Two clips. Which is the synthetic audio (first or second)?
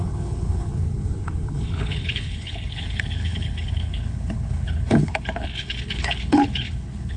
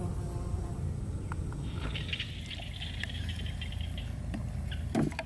first